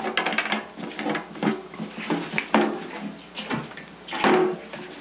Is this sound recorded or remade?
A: recorded